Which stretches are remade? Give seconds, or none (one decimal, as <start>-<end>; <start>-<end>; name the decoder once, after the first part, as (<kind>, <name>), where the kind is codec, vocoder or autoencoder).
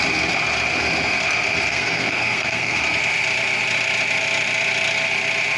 1.7-2.8 (codec, SNAC)